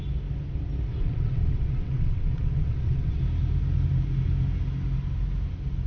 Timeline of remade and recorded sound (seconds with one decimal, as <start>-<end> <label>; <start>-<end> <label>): 0.0-0.9 recorded; 0.9-3.2 remade; 3.2-5.9 recorded